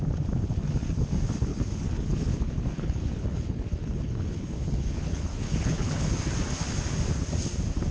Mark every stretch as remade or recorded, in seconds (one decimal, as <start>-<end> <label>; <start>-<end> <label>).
0.0-1.5 recorded; 1.5-6.2 remade; 6.2-7.9 recorded